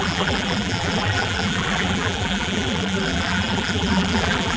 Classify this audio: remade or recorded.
remade